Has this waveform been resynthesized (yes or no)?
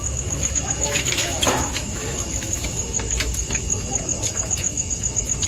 yes